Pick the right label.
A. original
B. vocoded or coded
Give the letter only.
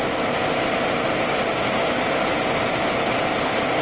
B